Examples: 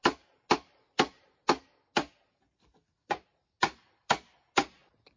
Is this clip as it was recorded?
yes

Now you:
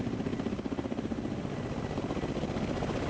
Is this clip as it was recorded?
yes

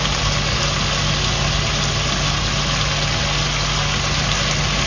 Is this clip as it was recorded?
yes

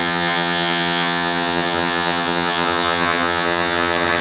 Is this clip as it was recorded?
no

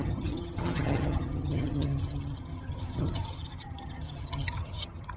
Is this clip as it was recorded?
no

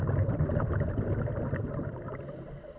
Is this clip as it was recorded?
yes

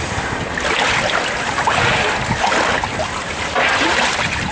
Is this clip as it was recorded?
yes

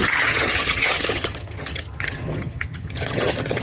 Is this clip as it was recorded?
no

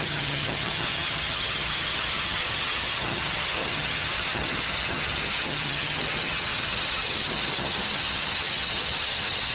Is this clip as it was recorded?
no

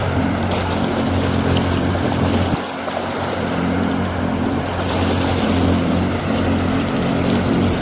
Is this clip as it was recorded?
yes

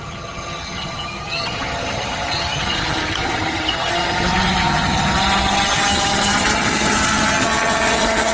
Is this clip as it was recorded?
no